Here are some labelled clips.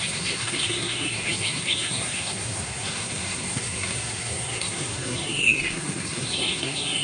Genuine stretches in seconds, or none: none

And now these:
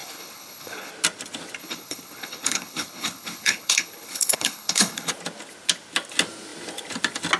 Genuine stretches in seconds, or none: 0.9-1.6; 5.1-7.4

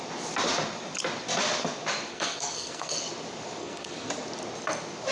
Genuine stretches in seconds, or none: 0.0-2.1; 3.0-3.6; 4.1-5.1

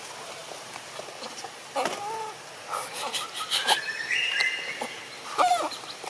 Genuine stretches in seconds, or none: 0.0-6.1

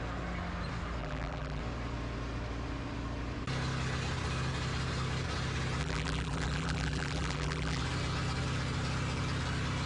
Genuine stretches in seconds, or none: 0.0-1.0; 1.6-5.8; 7.8-9.9